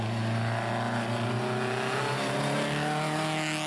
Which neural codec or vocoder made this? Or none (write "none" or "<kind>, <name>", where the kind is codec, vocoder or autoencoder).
none